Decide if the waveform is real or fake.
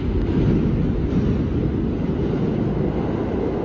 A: real